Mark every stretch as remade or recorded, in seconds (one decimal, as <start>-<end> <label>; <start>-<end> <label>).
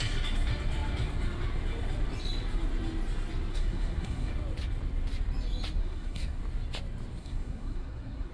0.0-3.5 recorded; 3.5-4.3 remade; 4.3-5.8 recorded; 5.8-6.4 remade; 6.4-7.2 recorded; 7.2-8.3 remade